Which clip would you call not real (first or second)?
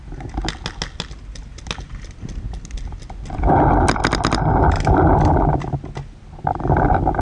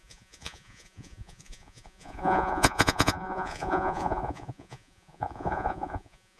second